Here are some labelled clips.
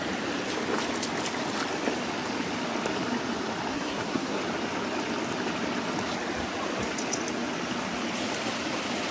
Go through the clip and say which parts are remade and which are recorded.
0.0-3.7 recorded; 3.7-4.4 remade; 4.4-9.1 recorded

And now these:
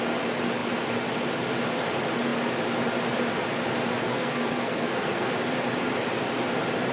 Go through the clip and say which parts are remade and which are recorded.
0.0-4.1 recorded; 4.1-5.3 remade; 5.3-6.9 recorded

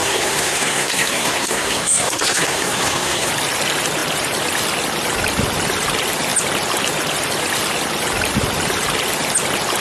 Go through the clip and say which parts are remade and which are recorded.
0.0-3.3 remade; 3.3-9.8 recorded

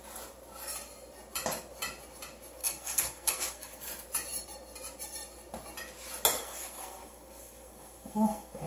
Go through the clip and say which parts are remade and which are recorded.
0.0-2.6 recorded; 2.6-3.9 remade; 3.9-6.4 recorded; 6.4-8.7 remade

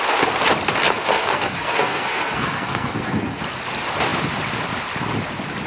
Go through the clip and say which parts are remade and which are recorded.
0.0-0.8 recorded; 0.8-3.4 remade; 3.4-5.7 recorded

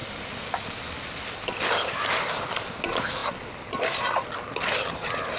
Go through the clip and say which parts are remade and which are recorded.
0.0-5.4 recorded

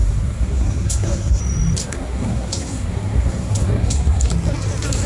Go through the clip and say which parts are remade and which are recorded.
0.0-1.4 remade; 1.4-1.8 recorded; 1.8-4.3 remade; 4.3-5.1 recorded